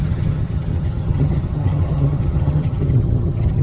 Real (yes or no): no